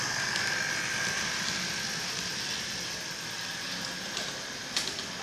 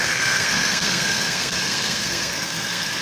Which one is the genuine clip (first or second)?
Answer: first